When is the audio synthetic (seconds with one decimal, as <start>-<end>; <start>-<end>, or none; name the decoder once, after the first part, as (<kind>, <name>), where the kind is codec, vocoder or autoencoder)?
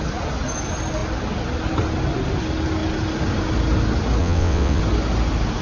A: 4.2-4.8 (vocoder, WaveNeXt)